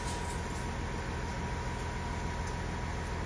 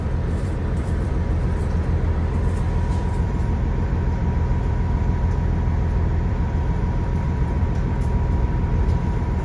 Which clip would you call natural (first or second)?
first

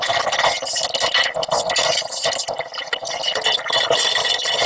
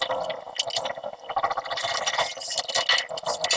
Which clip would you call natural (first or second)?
second